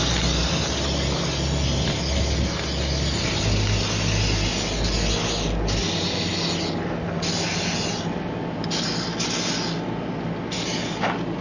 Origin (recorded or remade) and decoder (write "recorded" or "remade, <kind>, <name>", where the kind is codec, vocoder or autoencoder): recorded